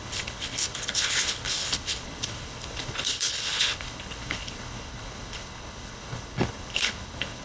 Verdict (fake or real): fake